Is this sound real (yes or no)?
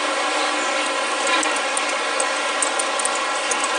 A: yes